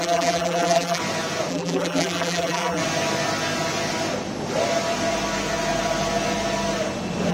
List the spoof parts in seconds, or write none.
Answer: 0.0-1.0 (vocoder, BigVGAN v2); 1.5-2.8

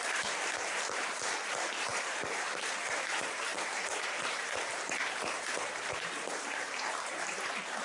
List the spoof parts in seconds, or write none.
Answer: 0.0-7.8 (vocoder, BigVGAN v2)